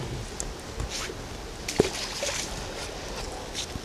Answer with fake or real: real